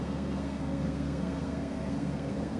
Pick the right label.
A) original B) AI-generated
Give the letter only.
B